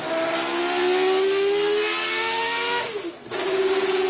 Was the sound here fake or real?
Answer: real